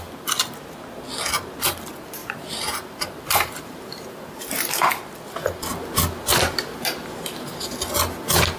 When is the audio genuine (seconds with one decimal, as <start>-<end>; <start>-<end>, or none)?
0.0-2.2; 5.0-8.6